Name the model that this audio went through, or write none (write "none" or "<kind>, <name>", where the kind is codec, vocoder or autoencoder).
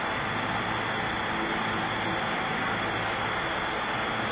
none